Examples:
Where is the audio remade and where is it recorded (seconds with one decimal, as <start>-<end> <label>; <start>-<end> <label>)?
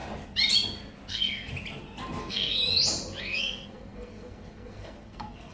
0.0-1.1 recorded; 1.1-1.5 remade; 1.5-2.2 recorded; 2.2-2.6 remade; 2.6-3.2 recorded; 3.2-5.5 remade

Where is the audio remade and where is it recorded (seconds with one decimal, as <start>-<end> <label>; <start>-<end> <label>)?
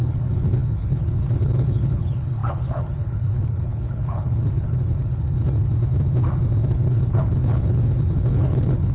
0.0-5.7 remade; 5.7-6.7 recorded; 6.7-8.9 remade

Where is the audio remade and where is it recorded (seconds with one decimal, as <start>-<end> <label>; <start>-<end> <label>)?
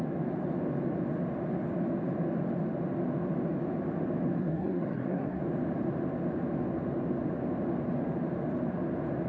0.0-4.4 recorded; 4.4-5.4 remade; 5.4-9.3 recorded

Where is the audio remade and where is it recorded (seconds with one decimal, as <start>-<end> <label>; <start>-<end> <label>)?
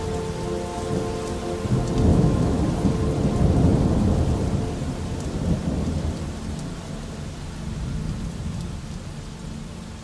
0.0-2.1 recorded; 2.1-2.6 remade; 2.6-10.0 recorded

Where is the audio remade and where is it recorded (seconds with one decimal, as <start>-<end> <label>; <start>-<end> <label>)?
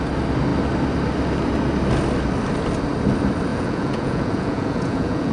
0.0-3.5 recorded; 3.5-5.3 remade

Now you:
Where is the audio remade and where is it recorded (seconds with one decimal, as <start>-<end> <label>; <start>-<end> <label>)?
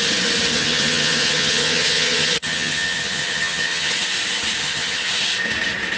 0.0-0.5 recorded; 0.5-3.9 remade; 3.9-4.6 recorded; 4.6-5.1 remade; 5.1-6.0 recorded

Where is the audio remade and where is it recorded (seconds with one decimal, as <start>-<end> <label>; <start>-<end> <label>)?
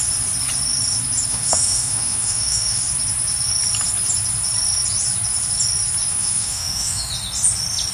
0.0-1.3 recorded; 1.3-2.8 remade; 2.8-6.1 recorded; 6.1-7.1 remade; 7.1-7.9 recorded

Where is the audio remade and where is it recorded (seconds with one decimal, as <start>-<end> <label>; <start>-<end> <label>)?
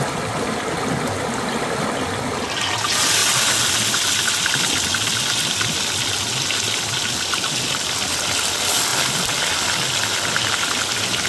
0.0-11.3 recorded